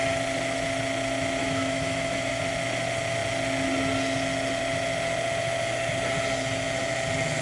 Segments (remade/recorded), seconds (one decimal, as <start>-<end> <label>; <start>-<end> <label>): 0.0-1.4 recorded; 1.4-2.4 remade; 2.4-7.4 recorded